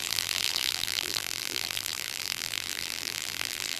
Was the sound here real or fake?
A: fake